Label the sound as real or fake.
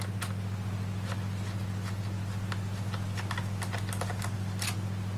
real